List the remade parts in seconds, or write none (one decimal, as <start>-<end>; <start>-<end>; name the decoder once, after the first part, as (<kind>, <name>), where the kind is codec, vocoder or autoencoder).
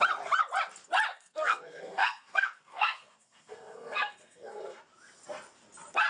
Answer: 1.1-4.8 (codec, SNAC)